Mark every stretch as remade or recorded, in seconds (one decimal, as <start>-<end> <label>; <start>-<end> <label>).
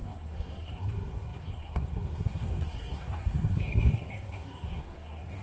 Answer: 0.0-5.4 remade